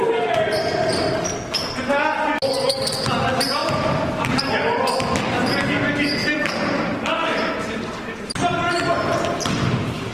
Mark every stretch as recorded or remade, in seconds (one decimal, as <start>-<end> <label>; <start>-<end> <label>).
0.0-3.6 recorded; 3.6-4.8 remade; 4.8-6.2 recorded; 6.2-7.5 remade; 7.5-10.1 recorded